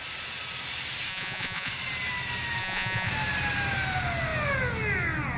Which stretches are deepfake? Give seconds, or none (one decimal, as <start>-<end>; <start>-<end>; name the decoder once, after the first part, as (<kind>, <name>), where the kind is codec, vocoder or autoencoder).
1.1-1.7 (vocoder, Vocos); 2.6-3.1